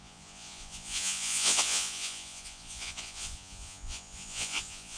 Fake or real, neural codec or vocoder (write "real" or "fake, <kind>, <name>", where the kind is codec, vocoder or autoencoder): fake, vocoder, Vocos